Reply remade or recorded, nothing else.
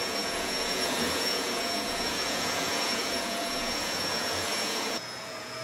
remade